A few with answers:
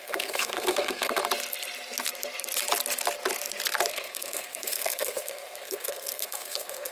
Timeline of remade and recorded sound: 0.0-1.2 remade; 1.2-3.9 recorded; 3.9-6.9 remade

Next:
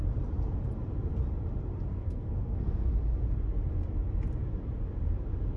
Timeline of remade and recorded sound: 0.0-1.9 recorded; 1.9-2.9 remade; 2.9-5.6 recorded

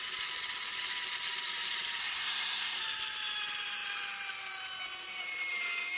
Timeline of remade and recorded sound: 0.0-2.0 recorded; 2.0-2.8 remade; 2.8-6.0 recorded

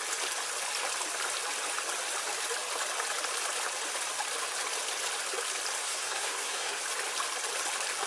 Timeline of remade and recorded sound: 0.0-5.8 recorded; 5.8-6.8 remade; 6.8-8.1 recorded

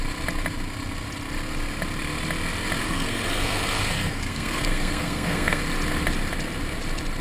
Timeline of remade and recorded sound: 0.0-2.8 recorded; 2.8-5.6 remade; 5.6-7.2 recorded

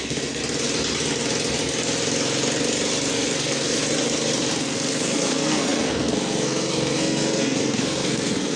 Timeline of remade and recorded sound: 0.0-0.4 remade; 0.4-3.1 recorded; 3.1-3.8 remade; 3.8-4.6 recorded; 4.6-8.6 remade

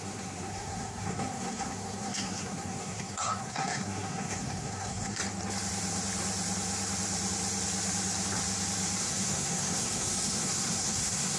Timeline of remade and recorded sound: 0.0-5.2 remade; 5.2-9.0 recorded; 9.0-11.4 remade

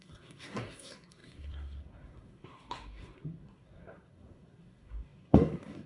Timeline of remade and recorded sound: 0.0-5.9 remade